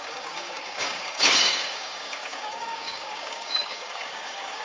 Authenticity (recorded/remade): remade